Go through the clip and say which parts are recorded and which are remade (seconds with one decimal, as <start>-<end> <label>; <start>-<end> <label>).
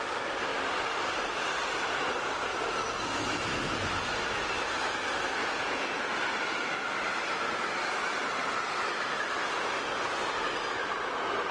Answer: 0.0-5.4 recorded; 5.4-6.2 remade; 6.2-11.5 recorded